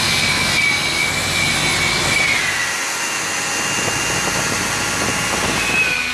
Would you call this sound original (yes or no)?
yes